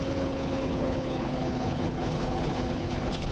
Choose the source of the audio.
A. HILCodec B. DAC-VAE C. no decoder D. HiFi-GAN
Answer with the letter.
A